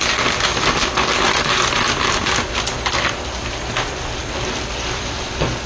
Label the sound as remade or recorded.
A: recorded